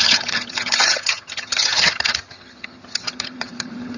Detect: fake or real fake